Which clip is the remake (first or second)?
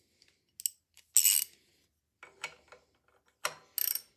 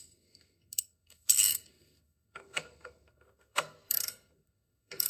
second